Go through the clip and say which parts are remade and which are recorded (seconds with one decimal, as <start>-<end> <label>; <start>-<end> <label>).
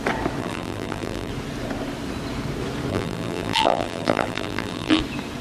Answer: 0.0-0.4 recorded; 0.4-1.3 remade; 1.3-2.9 recorded; 2.9-5.0 remade; 5.0-5.4 recorded